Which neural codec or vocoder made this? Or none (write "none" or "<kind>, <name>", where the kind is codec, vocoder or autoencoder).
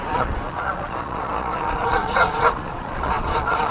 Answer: vocoder, Vocos